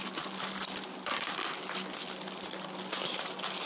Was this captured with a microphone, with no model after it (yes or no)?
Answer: yes